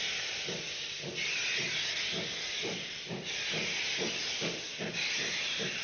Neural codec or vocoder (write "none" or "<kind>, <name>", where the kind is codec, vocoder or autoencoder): none